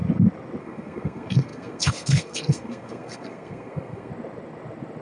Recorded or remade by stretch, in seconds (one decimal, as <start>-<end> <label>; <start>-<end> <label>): 0.0-0.6 recorded; 0.6-4.1 remade; 4.1-5.0 recorded